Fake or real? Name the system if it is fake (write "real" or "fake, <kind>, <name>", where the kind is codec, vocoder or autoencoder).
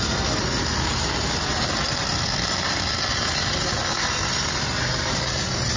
real